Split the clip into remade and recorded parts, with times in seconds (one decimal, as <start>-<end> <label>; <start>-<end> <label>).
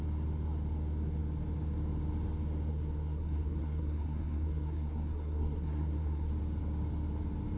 0.0-2.7 recorded; 2.7-6.3 remade; 6.3-7.6 recorded